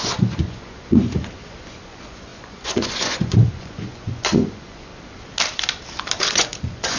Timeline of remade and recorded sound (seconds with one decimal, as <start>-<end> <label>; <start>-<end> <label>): 0.0-4.9 remade; 4.9-6.2 recorded; 6.2-7.0 remade